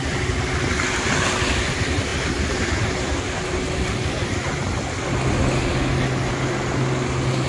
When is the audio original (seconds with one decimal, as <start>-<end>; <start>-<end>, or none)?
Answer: 0.0-7.5